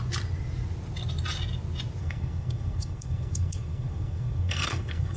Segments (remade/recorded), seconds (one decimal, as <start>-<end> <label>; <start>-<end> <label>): 0.0-2.0 recorded; 2.0-5.2 remade